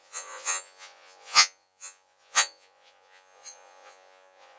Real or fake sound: fake